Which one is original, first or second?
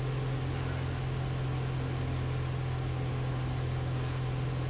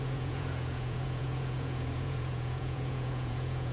first